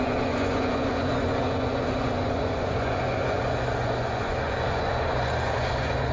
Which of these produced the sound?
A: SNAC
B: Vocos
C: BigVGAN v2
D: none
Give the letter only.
B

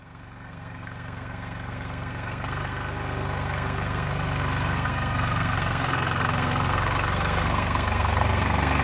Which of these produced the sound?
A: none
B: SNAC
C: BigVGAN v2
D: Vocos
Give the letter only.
B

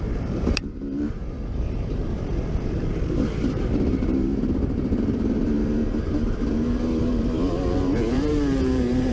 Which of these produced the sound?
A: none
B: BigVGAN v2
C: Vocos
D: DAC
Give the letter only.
B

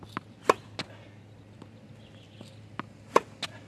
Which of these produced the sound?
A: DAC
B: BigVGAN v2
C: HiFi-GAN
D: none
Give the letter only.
D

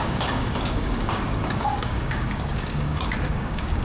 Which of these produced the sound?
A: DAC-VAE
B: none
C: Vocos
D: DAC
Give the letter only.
D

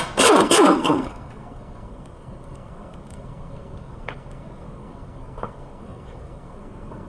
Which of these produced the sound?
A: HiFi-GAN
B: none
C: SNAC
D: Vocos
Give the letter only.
C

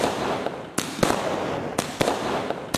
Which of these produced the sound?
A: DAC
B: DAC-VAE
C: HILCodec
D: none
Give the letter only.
D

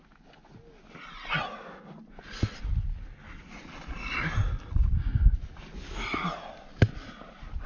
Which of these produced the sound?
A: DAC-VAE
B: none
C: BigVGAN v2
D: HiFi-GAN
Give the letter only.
B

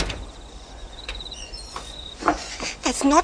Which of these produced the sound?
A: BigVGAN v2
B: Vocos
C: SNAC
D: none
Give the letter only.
B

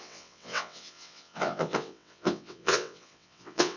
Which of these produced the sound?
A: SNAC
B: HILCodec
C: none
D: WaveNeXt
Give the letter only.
D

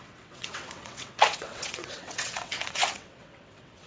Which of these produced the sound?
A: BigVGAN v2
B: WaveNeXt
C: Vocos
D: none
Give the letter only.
B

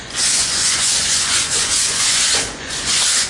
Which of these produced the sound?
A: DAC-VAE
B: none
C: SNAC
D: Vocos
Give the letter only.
D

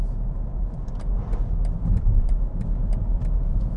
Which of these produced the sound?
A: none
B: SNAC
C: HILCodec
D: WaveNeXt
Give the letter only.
A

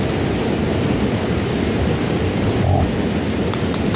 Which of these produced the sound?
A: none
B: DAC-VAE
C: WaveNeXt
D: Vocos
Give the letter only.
A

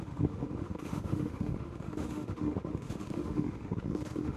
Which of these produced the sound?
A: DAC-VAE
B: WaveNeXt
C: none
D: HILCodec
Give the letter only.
A